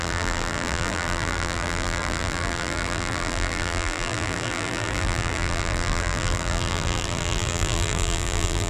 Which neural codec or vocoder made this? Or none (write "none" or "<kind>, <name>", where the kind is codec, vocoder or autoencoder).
vocoder, BigVGAN v2